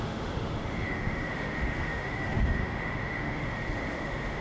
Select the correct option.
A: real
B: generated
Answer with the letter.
B